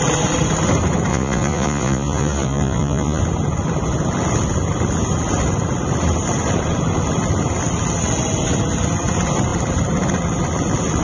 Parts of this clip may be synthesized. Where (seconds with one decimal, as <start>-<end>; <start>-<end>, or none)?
1.1-3.2